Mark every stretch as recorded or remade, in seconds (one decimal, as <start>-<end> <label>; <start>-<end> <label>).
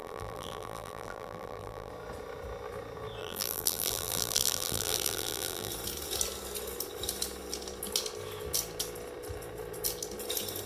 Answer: 0.0-1.9 remade; 1.9-3.2 recorded; 3.2-5.7 remade; 5.7-10.7 recorded